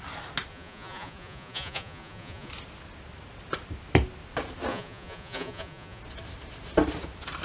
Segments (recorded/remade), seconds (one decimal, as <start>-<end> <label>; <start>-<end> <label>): 0.0-0.5 recorded; 0.5-2.5 remade; 2.5-4.7 recorded; 4.7-6.0 remade; 6.0-7.4 recorded